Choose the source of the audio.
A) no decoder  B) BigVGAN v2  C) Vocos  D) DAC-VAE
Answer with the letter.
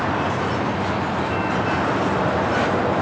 A